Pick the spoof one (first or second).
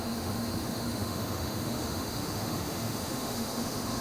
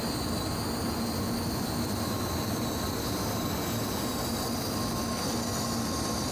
first